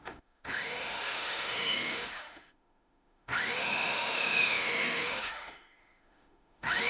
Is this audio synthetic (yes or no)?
yes